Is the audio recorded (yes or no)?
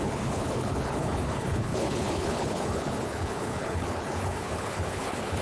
no